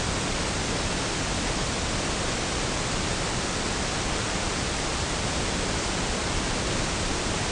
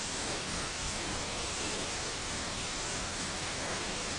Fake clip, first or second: second